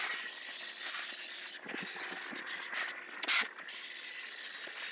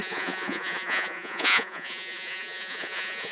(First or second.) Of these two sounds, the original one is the first